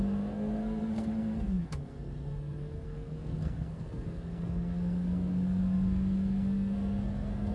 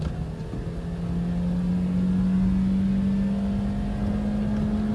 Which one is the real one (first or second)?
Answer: second